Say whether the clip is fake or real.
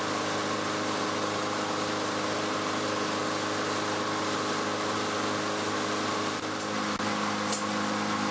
real